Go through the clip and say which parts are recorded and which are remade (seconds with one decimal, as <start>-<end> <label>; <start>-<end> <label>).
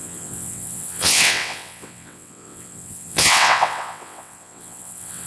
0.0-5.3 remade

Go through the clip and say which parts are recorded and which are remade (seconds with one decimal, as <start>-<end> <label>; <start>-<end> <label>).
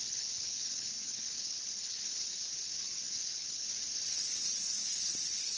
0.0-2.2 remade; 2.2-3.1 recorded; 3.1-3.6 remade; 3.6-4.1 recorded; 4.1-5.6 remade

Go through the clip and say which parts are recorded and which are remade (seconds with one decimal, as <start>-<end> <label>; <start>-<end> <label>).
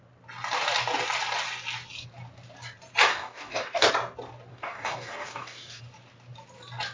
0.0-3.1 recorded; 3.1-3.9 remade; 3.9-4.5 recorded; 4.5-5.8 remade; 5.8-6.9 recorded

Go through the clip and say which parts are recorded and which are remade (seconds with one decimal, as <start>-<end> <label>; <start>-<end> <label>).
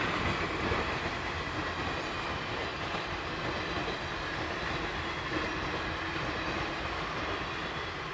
0.0-8.1 recorded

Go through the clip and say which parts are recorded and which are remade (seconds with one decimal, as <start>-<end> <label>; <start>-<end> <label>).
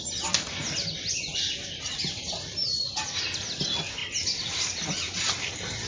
0.0-5.9 recorded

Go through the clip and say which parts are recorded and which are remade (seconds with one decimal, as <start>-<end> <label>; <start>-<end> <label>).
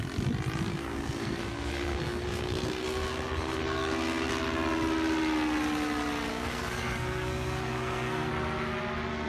0.0-0.7 recorded; 0.7-4.3 remade; 4.3-6.3 recorded; 6.3-8.3 remade; 8.3-9.3 recorded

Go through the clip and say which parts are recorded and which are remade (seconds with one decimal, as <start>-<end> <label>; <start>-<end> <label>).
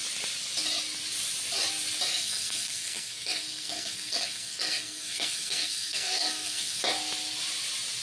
0.0-2.1 recorded; 2.1-6.8 remade; 6.8-8.0 recorded